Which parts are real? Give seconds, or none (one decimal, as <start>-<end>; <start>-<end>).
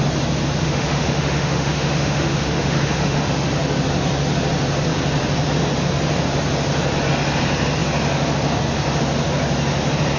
0.0-0.6; 3.2-10.2